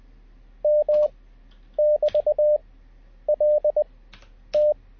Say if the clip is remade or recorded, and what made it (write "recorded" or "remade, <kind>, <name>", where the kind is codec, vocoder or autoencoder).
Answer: recorded